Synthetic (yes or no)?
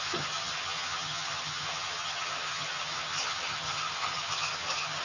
yes